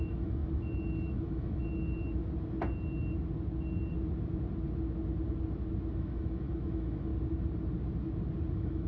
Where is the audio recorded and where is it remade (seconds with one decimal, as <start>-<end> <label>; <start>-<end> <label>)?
0.0-2.2 remade; 2.2-5.9 recorded; 5.9-7.1 remade; 7.1-8.5 recorded; 8.5-8.9 remade